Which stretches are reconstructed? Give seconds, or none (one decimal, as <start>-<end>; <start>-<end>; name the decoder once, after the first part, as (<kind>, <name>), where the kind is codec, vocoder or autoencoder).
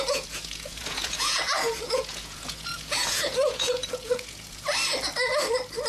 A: 0.0-4.7 (vocoder, Vocos)